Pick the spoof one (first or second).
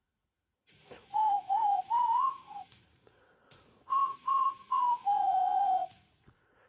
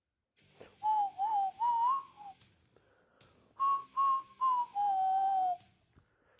first